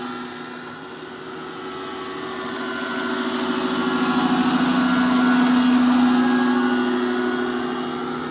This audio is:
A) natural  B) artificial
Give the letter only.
A